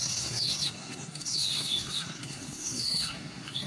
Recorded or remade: remade